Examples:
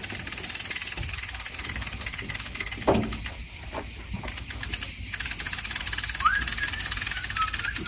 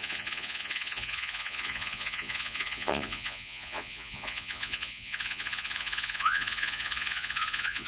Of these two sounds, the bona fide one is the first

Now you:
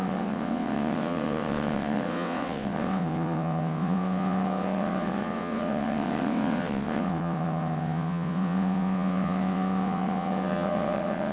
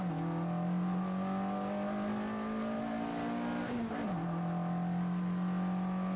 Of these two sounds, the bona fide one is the second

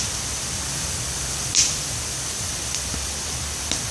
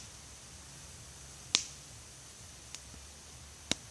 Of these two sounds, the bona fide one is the second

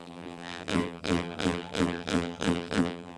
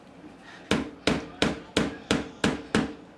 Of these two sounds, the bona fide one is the second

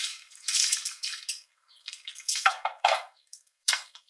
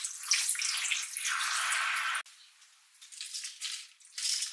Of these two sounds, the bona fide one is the second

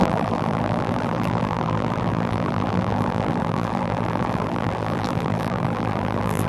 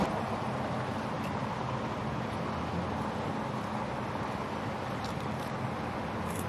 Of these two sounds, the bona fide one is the second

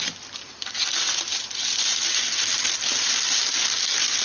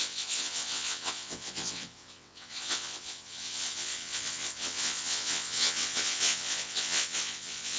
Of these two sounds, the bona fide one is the first